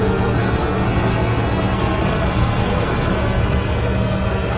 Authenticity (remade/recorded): remade